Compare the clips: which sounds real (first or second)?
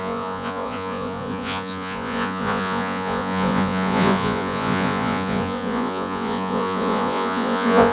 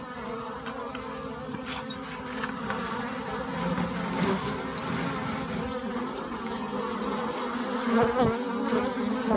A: second